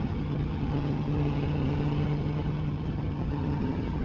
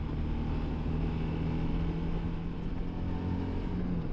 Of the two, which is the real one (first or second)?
second